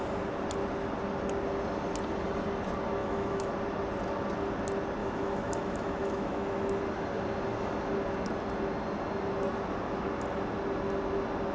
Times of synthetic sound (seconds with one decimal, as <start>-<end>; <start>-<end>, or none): 3.0-3.5; 5.0-6.8